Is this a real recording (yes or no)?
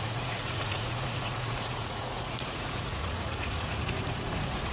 no